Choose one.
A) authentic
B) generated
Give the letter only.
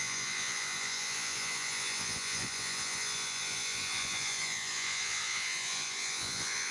B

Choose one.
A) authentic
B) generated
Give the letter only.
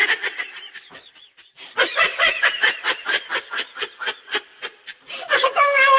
A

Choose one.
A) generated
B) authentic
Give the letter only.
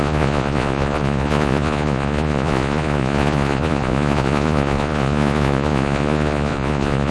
A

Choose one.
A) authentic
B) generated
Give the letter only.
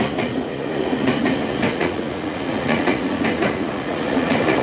B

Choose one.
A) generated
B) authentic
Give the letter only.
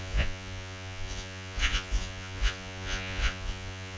A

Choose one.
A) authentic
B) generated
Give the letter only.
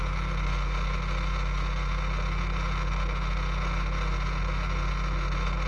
A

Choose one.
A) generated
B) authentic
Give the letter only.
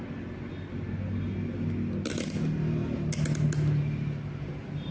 B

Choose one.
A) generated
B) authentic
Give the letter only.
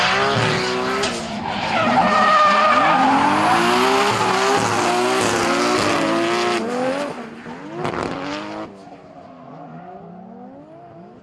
B